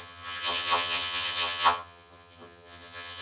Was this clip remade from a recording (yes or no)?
yes